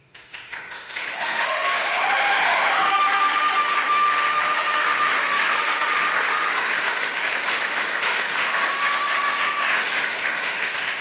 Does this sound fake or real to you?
fake